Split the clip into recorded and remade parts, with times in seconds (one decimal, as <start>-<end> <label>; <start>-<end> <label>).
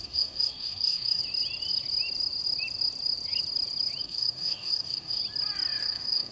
0.0-1.2 remade; 1.2-4.0 recorded; 4.0-5.2 remade; 5.2-5.8 recorded; 5.8-6.3 remade